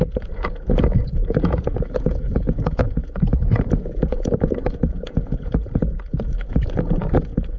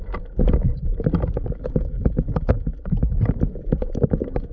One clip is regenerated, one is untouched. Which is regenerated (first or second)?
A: first